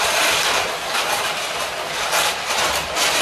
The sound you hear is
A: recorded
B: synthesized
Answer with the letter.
A